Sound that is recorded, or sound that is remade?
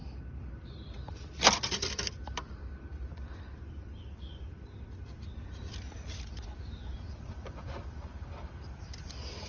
remade